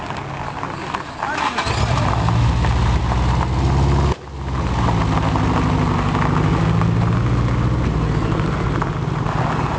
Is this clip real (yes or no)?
yes